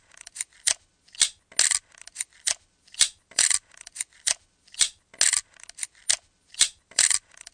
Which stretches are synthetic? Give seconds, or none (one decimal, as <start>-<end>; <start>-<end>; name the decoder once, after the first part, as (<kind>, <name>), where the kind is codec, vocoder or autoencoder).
0.0-0.9 (vocoder, BigVGAN v2); 2.1-5.1; 6.5-7.5